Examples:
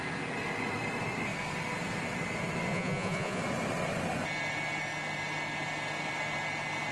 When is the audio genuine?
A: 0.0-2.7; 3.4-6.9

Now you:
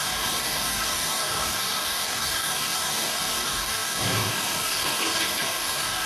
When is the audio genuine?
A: none

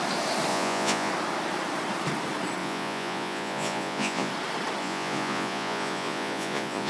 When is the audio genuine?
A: 0.0-0.5; 1.1-2.6; 4.3-4.8

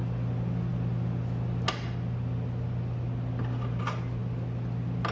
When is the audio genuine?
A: 0.0-5.1